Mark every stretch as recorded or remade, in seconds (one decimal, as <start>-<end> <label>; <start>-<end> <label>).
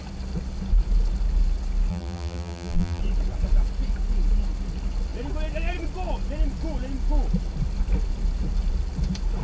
0.0-1.9 recorded; 1.9-3.0 remade; 3.0-9.4 recorded